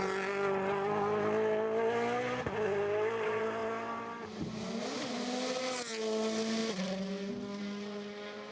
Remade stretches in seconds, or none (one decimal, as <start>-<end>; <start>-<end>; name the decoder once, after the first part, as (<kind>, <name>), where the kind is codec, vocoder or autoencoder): none